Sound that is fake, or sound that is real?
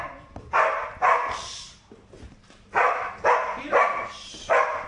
fake